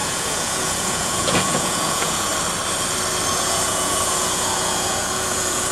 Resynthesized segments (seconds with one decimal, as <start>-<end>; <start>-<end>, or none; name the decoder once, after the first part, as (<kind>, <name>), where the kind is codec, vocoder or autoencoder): 0.0-2.3 (vocoder, Vocos); 3.3-5.7